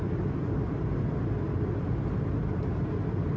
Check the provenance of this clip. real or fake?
real